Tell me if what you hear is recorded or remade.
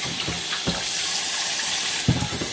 remade